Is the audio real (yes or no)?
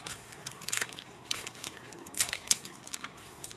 no